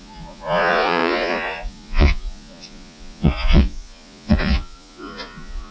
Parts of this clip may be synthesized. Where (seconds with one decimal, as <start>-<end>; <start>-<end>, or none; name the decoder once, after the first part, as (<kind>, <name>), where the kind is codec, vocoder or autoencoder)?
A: 0.0-5.7 (vocoder, Vocos)